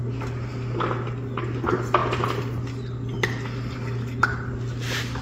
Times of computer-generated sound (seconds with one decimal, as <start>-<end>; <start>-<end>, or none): none